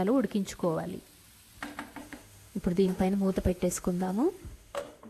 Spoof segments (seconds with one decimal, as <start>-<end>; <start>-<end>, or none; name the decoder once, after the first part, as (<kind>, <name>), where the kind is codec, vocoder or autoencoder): 2.0-5.1 (autoencoder, DAC-VAE)